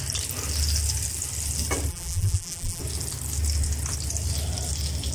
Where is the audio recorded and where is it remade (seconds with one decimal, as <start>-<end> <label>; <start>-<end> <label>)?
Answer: 0.0-1.9 recorded; 1.9-2.8 remade; 2.8-5.1 recorded